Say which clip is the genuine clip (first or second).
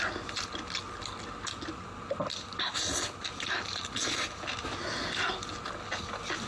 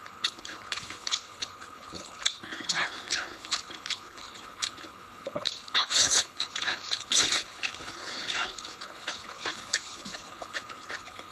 first